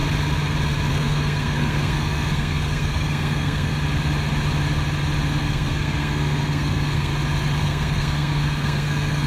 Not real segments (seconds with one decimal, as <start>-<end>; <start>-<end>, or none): 0.9-3.7; 5.4-7.1; 7.6-9.3